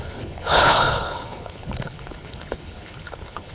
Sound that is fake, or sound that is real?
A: fake